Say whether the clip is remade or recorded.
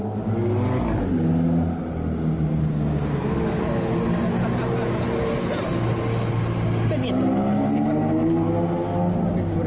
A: recorded